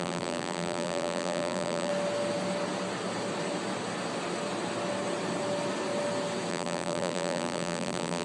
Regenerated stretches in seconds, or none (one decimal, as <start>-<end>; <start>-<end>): 0.0-1.9; 6.5-8.2